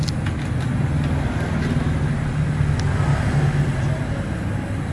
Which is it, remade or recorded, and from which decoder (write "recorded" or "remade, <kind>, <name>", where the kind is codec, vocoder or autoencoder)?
recorded